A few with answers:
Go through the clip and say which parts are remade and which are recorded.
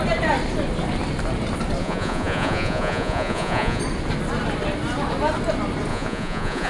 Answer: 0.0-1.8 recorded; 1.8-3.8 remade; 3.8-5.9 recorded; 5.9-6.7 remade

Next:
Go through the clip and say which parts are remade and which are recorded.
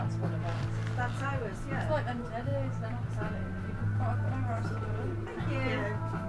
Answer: 0.0-6.3 recorded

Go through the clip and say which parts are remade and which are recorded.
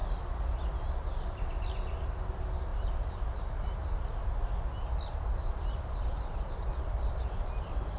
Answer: 0.0-8.0 recorded